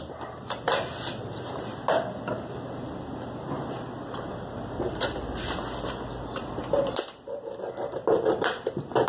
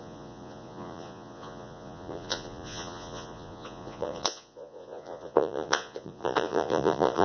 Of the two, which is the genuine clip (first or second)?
first